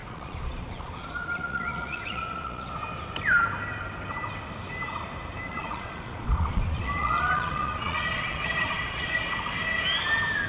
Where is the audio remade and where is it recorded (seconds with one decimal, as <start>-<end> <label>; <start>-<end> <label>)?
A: 0.0-2.7 remade; 2.7-5.5 recorded; 5.5-9.3 remade; 9.3-10.5 recorded